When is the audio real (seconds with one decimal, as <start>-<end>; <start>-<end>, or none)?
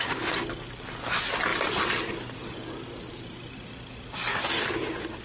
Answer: 0.0-5.2